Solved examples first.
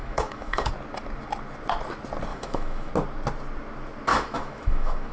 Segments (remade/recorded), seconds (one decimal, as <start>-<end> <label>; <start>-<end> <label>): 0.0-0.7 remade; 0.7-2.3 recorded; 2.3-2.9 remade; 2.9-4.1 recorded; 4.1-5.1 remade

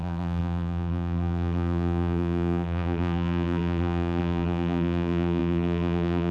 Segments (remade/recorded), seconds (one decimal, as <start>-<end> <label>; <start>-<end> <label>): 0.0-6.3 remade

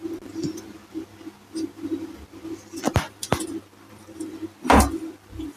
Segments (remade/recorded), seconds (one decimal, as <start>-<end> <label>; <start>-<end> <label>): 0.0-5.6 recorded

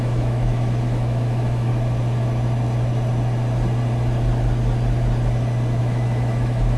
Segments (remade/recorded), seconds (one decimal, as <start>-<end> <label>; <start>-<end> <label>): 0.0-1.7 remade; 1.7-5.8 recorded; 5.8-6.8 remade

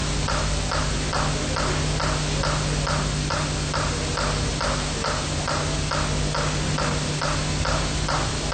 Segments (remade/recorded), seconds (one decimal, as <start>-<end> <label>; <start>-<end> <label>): 0.0-8.5 recorded

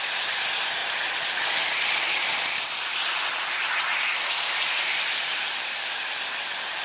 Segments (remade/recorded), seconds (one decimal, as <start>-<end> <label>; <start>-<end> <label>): 0.0-4.6 remade; 4.6-5.8 recorded; 5.8-6.8 remade

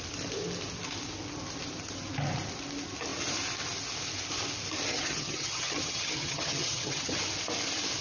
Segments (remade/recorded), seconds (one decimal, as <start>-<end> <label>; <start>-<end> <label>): 0.0-4.9 recorded; 4.9-7.2 remade; 7.2-8.0 recorded

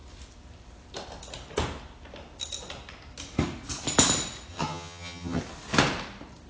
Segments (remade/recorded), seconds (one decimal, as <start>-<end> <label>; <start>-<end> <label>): 0.0-4.5 recorded; 4.5-5.4 remade; 5.4-6.5 recorded